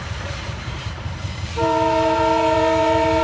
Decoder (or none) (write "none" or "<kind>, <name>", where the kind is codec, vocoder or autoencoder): vocoder, BigVGAN v2